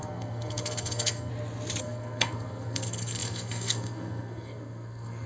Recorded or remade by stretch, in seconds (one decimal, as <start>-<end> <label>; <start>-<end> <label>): 0.0-1.3 remade; 1.3-1.8 recorded; 1.8-5.3 remade